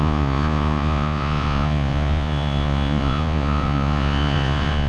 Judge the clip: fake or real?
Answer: fake